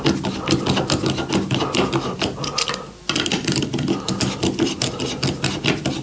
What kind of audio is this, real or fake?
real